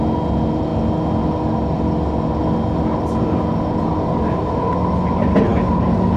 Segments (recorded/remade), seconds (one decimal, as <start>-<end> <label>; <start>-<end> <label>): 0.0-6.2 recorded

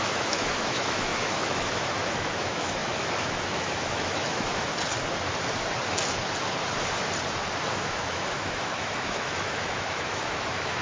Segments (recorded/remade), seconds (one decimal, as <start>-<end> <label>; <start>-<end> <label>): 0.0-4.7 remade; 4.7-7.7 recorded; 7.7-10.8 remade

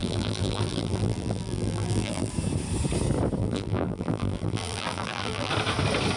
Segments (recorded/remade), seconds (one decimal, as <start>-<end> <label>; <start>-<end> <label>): 0.0-2.3 remade; 2.3-3.4 recorded; 3.4-5.5 remade; 5.5-6.2 recorded

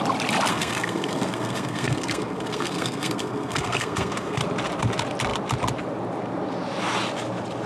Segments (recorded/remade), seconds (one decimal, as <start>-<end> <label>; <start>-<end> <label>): 0.0-0.5 recorded; 0.5-4.4 remade; 4.4-7.7 recorded

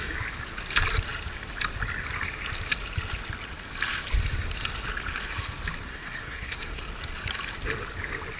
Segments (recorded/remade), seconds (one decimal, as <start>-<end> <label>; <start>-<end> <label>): 0.0-5.9 recorded; 5.9-6.8 remade; 6.8-8.4 recorded